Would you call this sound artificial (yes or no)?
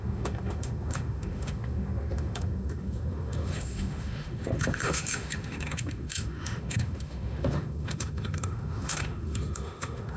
yes